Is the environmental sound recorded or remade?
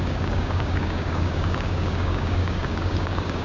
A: remade